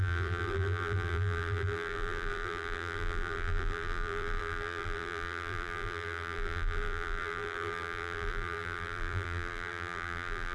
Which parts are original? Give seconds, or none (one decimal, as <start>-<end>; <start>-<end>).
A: none